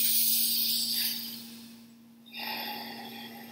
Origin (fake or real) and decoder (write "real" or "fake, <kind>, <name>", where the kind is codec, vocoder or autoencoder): real